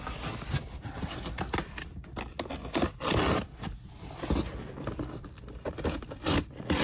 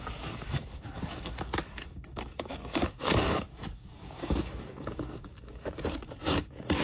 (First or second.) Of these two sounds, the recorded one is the first